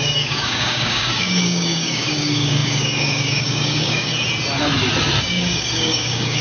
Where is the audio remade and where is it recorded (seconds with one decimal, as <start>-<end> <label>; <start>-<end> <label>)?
0.0-4.1 remade; 4.1-5.2 recorded; 5.2-6.4 remade